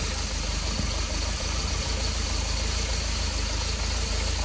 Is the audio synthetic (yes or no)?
no